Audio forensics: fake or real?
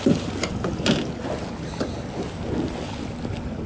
real